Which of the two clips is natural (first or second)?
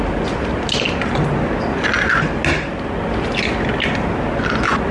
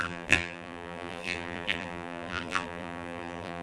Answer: first